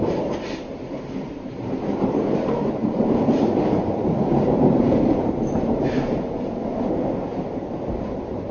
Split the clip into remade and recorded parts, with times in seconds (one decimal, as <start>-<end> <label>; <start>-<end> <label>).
0.0-8.5 remade